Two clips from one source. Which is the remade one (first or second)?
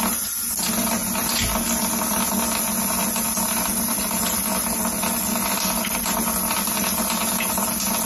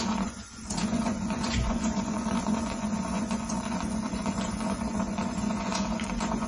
second